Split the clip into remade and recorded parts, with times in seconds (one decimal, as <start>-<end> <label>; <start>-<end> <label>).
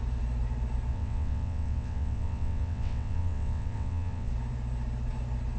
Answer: 0.0-0.9 recorded; 0.9-4.3 remade; 4.3-5.6 recorded